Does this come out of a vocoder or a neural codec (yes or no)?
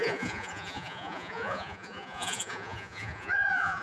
yes